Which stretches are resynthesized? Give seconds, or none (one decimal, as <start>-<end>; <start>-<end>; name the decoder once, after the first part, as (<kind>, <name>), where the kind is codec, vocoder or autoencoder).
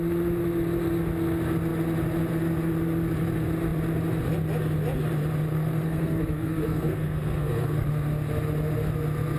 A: 5.5-7.9 (codec, SNAC)